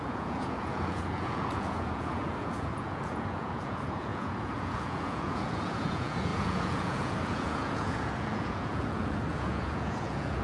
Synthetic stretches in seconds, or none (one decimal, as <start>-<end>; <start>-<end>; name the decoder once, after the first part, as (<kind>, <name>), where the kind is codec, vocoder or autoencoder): 0.0-10.4 (vocoder, Vocos)